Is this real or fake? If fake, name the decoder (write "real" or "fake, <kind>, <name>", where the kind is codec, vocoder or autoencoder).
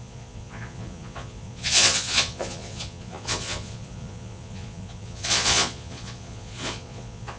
fake, vocoder, Vocos